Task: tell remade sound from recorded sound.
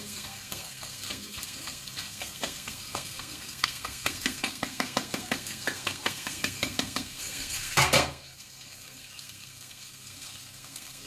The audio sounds remade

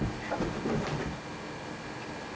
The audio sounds recorded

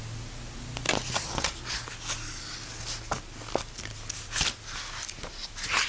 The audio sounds recorded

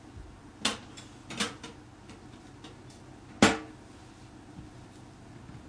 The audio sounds recorded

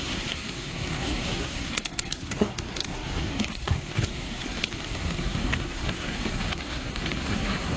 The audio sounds remade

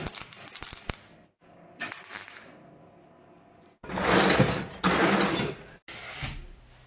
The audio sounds recorded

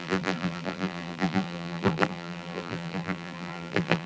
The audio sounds remade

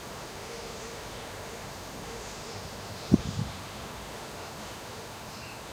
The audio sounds remade